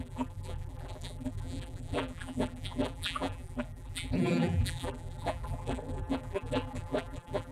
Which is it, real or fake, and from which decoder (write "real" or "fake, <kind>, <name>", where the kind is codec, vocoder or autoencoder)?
fake, vocoder, BigVGAN v2